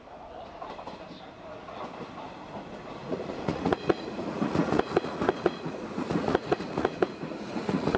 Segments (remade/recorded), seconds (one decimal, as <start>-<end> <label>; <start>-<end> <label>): 0.0-3.0 recorded; 3.0-8.0 remade